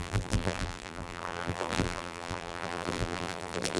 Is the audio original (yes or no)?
no